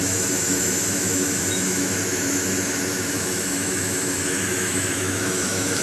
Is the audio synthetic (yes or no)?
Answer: yes